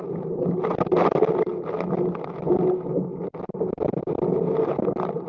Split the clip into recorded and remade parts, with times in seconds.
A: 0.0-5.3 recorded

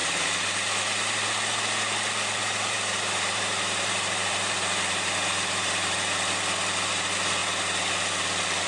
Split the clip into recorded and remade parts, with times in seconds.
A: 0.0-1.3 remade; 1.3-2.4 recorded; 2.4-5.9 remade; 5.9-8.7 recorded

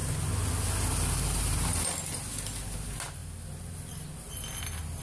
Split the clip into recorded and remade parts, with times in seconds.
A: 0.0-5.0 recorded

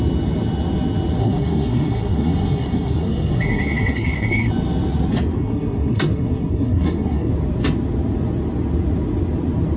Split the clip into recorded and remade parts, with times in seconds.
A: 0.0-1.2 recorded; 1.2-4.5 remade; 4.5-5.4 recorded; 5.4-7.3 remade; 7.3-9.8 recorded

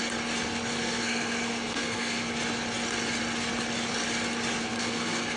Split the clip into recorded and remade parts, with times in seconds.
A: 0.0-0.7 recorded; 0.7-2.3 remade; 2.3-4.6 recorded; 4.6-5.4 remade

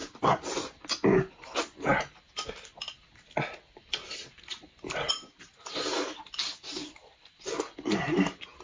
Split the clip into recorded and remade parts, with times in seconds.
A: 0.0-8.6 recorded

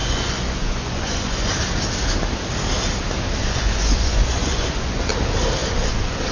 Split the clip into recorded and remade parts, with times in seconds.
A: 0.0-1.5 remade; 1.5-3.4 recorded; 3.4-5.1 remade; 5.1-5.6 recorded; 5.6-6.3 remade

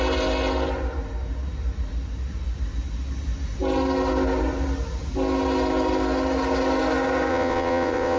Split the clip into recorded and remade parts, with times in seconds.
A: 0.0-7.3 recorded; 7.3-8.2 remade